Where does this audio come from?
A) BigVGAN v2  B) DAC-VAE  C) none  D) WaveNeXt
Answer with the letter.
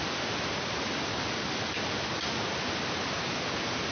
C